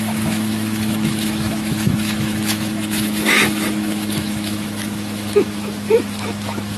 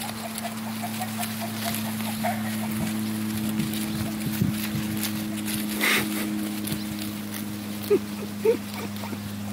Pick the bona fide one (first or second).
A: second